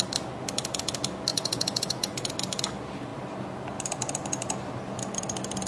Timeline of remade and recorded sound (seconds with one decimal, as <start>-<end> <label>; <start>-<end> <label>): 0.0-1.3 recorded; 1.3-2.3 remade; 2.3-5.7 recorded